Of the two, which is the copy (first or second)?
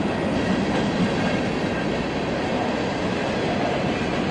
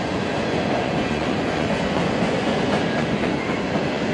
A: second